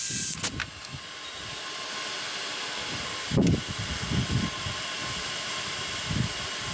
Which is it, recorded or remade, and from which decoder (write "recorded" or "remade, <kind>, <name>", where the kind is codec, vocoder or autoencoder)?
recorded